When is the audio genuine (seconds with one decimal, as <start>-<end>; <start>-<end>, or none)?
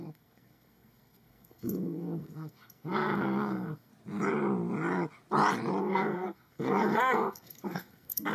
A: 3.9-5.8